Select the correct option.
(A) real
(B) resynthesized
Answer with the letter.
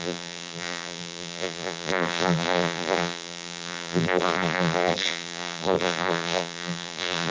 B